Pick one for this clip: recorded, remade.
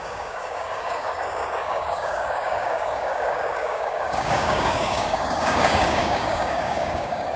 remade